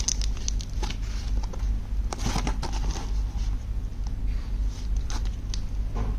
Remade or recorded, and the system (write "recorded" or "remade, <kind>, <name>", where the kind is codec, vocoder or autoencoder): recorded